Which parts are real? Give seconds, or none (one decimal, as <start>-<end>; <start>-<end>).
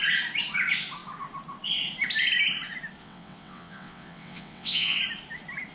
0.0-3.0; 5.0-5.7